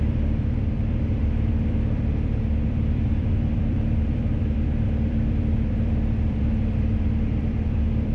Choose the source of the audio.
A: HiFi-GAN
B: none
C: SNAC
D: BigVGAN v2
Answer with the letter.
D